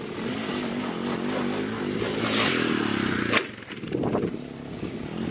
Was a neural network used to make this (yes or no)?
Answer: no